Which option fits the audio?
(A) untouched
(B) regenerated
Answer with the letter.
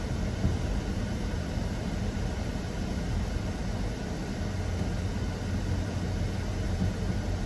A